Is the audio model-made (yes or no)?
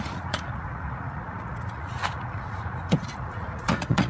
yes